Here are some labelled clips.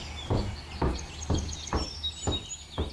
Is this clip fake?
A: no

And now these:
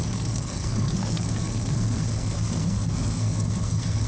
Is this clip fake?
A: yes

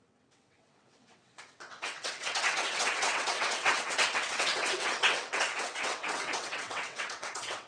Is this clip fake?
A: yes